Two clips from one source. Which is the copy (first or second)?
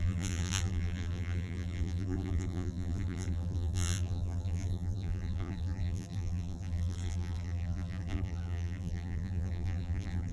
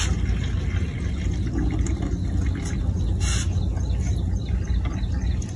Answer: first